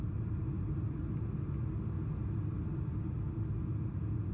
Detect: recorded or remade recorded